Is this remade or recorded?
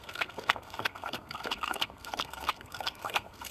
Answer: remade